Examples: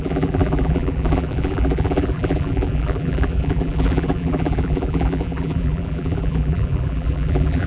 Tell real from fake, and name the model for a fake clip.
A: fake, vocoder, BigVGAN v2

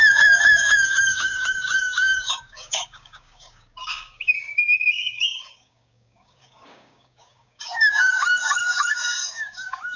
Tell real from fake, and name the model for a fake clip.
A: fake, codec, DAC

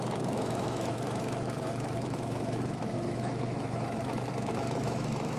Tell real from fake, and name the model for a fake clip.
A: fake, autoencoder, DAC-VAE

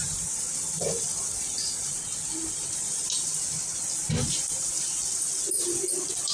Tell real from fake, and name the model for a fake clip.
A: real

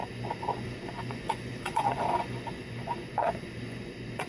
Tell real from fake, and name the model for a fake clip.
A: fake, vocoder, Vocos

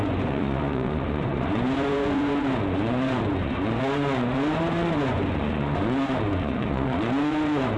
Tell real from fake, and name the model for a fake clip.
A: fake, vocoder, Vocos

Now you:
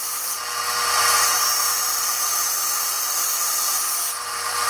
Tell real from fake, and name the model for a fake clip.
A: fake, vocoder, BigVGAN v2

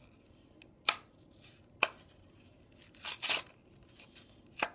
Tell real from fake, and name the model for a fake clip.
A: real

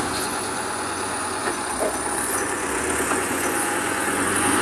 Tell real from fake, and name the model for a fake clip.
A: fake, vocoder, Vocos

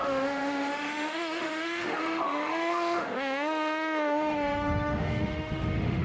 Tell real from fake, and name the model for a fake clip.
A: fake, autoencoder, DAC-VAE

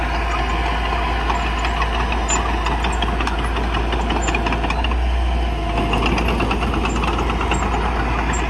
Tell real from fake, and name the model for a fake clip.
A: real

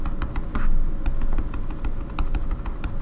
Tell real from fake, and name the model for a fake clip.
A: real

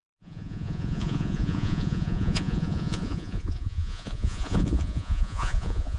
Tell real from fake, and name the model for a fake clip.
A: fake, vocoder, Vocos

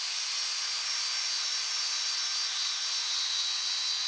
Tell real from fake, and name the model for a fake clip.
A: real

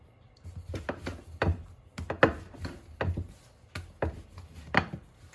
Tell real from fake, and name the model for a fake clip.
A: real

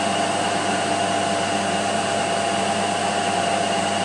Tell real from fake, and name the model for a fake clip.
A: real